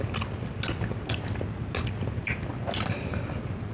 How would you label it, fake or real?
real